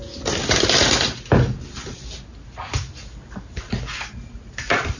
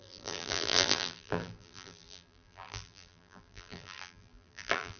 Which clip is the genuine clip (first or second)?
first